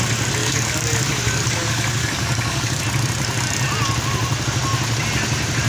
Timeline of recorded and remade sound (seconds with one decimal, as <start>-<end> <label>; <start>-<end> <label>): 0.0-0.4 recorded; 0.4-2.8 remade; 2.8-5.7 recorded